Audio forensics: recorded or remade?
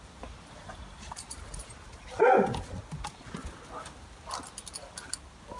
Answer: recorded